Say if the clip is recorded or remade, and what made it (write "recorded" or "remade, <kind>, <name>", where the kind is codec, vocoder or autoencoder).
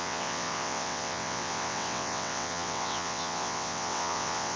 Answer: remade, vocoder, WaveNeXt